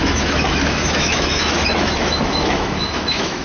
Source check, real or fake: fake